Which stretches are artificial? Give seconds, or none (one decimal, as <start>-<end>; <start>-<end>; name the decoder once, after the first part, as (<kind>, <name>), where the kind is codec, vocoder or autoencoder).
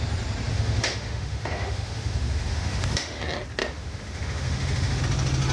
0.5-3.2 (autoencoder, DAC-VAE); 3.6-5.0